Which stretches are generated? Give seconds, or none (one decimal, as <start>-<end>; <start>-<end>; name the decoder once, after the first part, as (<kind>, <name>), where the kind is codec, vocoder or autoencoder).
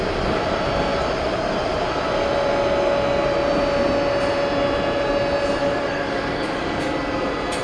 5.6-6.8 (codec, DAC)